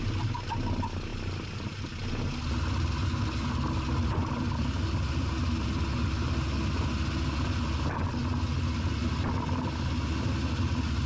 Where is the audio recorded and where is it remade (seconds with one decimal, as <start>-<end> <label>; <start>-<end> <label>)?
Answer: 0.0-11.1 recorded